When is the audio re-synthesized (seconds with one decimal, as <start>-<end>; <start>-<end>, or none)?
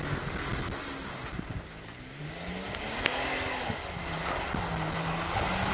none